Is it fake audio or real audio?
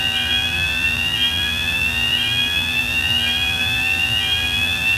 fake